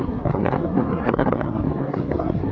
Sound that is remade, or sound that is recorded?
remade